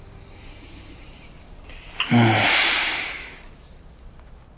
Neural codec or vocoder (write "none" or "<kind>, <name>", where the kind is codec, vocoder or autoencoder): none